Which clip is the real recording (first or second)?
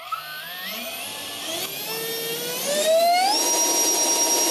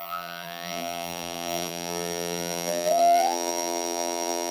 first